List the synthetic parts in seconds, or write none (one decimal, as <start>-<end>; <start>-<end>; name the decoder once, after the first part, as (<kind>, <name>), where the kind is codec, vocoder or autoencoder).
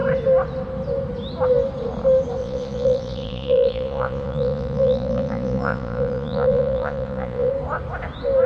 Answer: 2.4-7.5 (vocoder, Vocos)